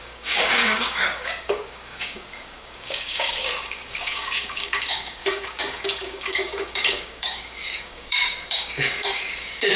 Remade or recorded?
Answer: remade